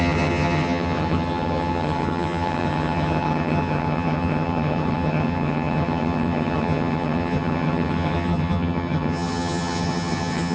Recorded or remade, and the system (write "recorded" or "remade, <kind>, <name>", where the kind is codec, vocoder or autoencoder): remade, vocoder, HiFi-GAN